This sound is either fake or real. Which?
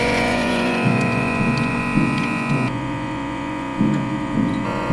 fake